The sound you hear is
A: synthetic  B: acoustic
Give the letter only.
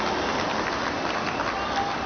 B